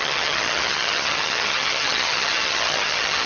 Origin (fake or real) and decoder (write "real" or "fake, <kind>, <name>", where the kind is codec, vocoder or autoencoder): fake, vocoder, HiFi-GAN